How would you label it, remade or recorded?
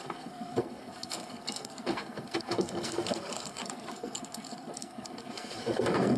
remade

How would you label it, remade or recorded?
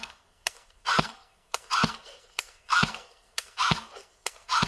remade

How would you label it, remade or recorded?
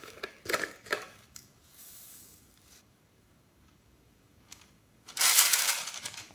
remade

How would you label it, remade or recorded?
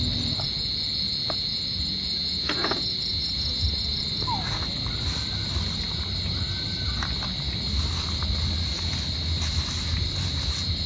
recorded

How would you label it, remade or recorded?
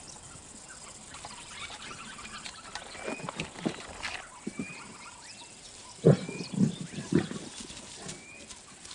recorded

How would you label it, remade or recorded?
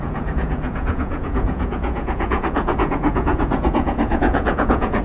remade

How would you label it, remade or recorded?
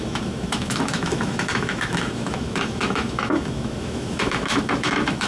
remade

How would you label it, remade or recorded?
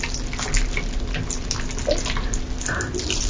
recorded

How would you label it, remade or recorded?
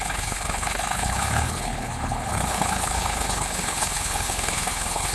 remade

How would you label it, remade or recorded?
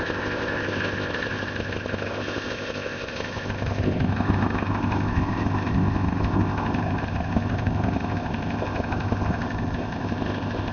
remade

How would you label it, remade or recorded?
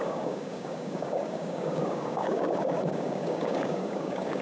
remade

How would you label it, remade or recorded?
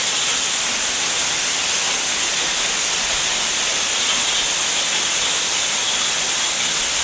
recorded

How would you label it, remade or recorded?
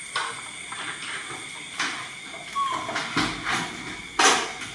recorded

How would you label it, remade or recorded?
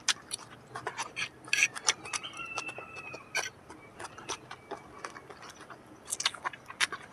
recorded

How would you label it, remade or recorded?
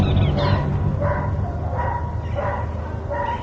recorded